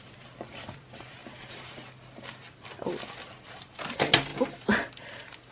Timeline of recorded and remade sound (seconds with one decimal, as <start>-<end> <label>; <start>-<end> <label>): 0.0-1.2 recorded; 1.2-2.9 remade; 2.9-4.3 recorded; 4.3-5.5 remade